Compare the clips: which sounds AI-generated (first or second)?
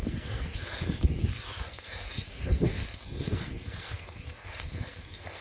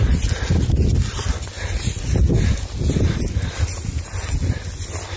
first